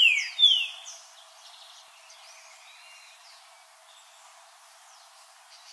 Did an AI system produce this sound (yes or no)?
no